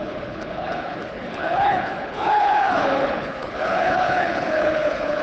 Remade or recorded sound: remade